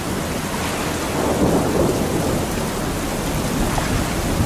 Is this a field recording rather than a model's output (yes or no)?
yes